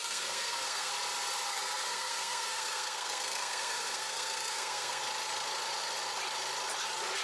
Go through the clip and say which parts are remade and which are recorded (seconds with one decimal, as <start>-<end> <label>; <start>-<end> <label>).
0.0-0.9 remade; 0.9-1.5 recorded; 1.5-5.0 remade; 5.0-7.2 recorded